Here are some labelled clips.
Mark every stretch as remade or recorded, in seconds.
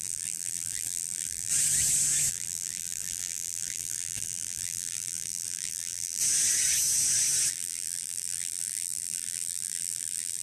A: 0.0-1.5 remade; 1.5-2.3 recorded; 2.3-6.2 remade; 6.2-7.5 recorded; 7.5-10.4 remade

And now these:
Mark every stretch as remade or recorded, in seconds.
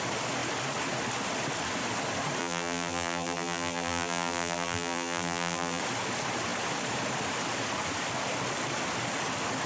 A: 0.0-2.4 recorded; 2.4-5.8 remade; 5.8-9.7 recorded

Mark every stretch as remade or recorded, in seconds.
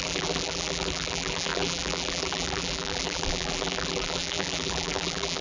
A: 0.0-5.4 remade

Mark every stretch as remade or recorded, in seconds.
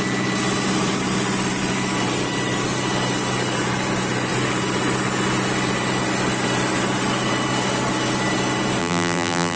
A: 0.0-8.8 recorded; 8.8-9.6 remade